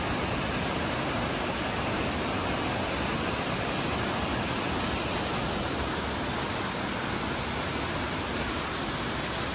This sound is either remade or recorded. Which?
recorded